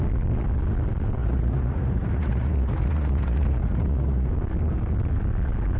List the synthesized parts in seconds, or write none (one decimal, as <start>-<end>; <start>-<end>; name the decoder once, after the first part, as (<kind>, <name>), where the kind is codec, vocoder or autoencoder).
1.2-4.3 (vocoder, Vocos)